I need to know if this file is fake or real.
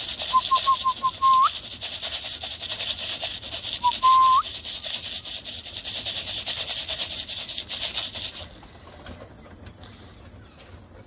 real